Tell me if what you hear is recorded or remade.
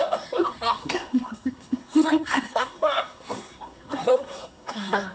remade